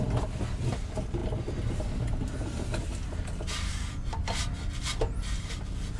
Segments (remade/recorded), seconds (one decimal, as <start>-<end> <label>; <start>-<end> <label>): 0.0-6.0 recorded